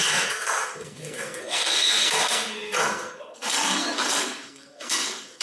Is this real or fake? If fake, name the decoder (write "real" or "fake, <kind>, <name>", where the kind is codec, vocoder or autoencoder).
fake, codec, SNAC